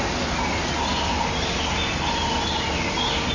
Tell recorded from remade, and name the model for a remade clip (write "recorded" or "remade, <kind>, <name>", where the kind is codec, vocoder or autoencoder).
recorded